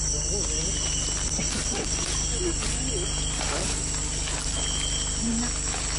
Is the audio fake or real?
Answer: real